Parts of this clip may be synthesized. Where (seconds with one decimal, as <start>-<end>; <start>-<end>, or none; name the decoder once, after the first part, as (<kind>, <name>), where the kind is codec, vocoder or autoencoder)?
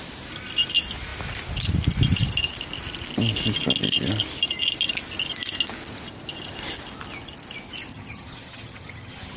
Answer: 7.9-9.4 (vocoder, HiFi-GAN)